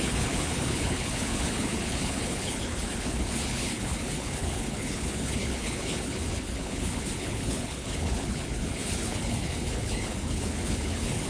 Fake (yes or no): yes